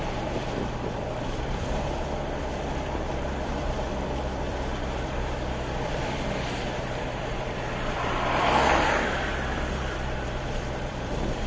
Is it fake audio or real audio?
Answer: fake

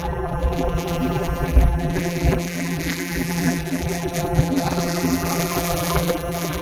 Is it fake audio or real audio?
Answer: fake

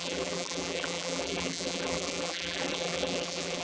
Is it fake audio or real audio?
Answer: fake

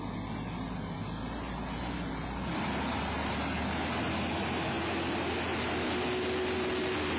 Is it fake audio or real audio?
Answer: real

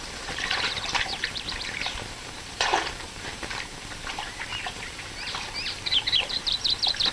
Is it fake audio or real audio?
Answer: fake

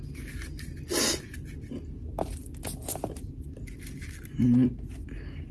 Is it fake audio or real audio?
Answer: real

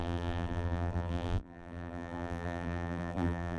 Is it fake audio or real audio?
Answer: fake